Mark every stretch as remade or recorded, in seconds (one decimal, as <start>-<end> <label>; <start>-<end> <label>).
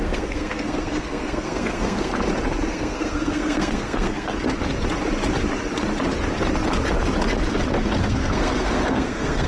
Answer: 0.0-2.1 remade; 2.1-2.7 recorded; 2.7-4.3 remade; 4.3-8.0 recorded; 8.0-9.5 remade